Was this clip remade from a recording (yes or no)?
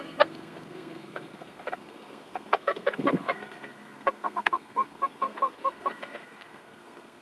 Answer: yes